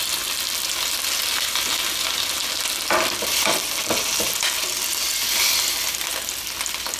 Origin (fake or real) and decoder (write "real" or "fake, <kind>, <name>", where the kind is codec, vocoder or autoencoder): real